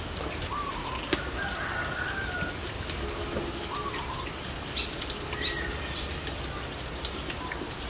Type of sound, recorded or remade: recorded